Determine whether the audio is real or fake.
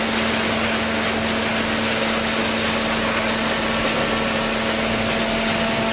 real